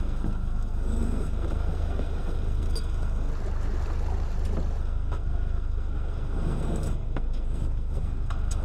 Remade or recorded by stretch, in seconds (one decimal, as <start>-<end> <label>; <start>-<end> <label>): 0.0-3.3 remade; 3.3-4.8 recorded; 4.8-8.6 remade